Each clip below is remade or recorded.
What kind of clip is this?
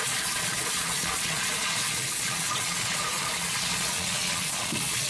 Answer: remade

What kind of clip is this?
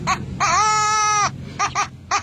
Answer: recorded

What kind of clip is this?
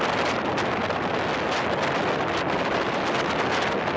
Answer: recorded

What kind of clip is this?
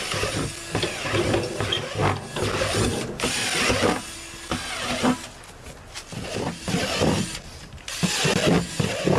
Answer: recorded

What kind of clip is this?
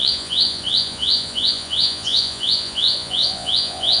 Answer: remade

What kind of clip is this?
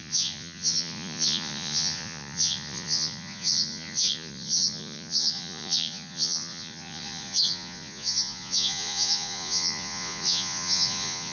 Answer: remade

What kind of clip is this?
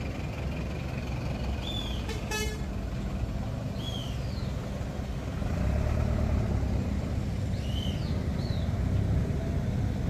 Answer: recorded